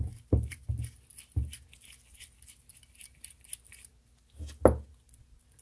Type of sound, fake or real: real